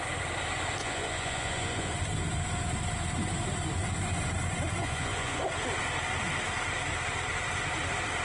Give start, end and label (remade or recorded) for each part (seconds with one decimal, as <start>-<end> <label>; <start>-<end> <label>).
0.0-0.8 recorded; 0.8-1.9 remade; 1.9-4.8 recorded; 4.8-5.4 remade; 5.4-8.2 recorded